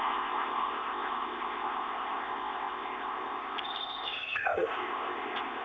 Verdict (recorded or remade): remade